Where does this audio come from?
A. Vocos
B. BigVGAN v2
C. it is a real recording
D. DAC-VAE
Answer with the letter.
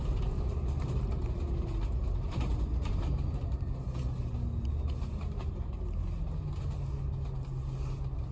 C